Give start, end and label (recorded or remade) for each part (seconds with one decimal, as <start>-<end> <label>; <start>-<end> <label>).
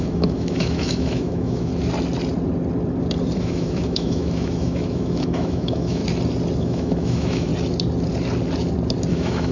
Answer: 0.0-1.7 remade; 1.7-3.4 recorded; 3.4-6.0 remade; 6.0-6.6 recorded; 6.6-7.5 remade; 7.5-9.1 recorded; 9.1-9.5 remade